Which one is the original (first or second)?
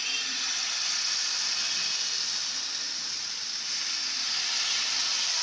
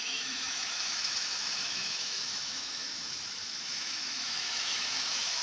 first